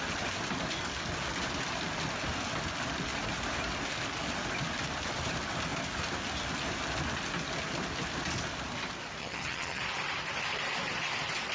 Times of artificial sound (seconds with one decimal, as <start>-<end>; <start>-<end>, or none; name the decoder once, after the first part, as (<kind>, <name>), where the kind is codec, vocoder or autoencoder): 9.2-9.8 (vocoder, HiFi-GAN)